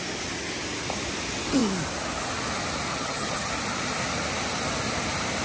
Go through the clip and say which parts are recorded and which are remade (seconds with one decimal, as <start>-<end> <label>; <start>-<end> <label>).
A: 0.0-2.9 recorded; 2.9-3.5 remade; 3.5-5.4 recorded